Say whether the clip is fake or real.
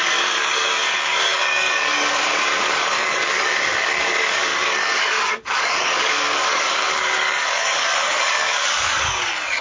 fake